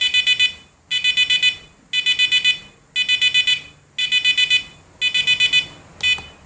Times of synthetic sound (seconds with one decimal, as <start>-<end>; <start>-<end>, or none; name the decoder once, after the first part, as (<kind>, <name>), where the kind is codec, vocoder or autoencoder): none